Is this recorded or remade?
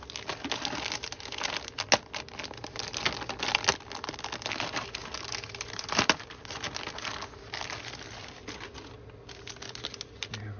recorded